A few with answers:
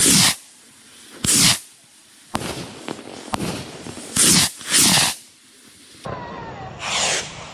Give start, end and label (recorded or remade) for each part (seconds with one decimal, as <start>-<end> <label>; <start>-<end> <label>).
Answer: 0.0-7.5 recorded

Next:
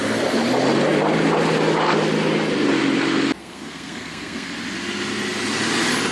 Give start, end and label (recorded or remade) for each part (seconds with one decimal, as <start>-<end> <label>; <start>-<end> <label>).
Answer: 0.0-3.4 recorded; 3.4-4.5 remade; 4.5-6.1 recorded

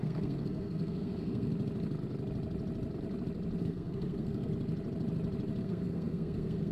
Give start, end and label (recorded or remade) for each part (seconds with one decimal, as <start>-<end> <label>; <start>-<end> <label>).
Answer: 0.0-1.5 remade; 1.5-3.6 recorded; 3.6-4.5 remade; 4.5-5.6 recorded; 5.6-6.7 remade

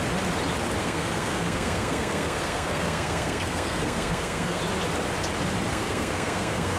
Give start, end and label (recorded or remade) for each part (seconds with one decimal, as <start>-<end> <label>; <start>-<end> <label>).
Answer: 0.0-0.8 recorded; 0.8-4.6 remade; 4.6-5.7 recorded; 5.7-6.8 remade

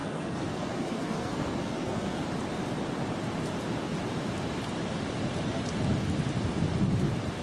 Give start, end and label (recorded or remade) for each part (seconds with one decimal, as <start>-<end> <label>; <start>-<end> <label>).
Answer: 0.0-2.2 remade; 2.2-7.4 recorded

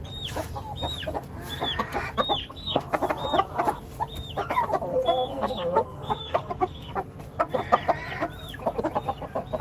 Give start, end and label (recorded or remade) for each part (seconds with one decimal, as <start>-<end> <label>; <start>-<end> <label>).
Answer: 0.0-2.4 recorded; 2.4-2.9 remade; 2.9-4.9 recorded; 4.9-7.2 remade; 7.2-9.6 recorded

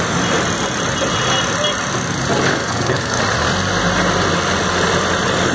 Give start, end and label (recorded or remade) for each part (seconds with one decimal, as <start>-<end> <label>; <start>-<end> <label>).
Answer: 0.0-2.5 recorded; 2.5-3.2 remade; 3.2-5.5 recorded